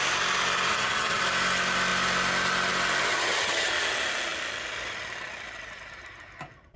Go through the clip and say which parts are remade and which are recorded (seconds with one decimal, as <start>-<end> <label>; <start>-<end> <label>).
0.0-0.7 recorded; 0.7-1.2 remade; 1.2-3.1 recorded; 3.1-3.7 remade; 3.7-6.8 recorded